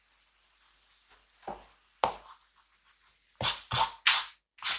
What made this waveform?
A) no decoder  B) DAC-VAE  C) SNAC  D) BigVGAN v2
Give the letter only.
A